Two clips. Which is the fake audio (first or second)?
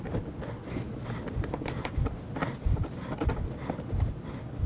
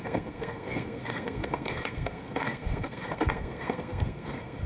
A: second